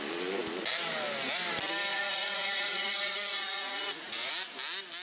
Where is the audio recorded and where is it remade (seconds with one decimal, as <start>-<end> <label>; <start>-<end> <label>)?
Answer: 0.0-1.9 recorded; 1.9-4.3 remade; 4.3-5.0 recorded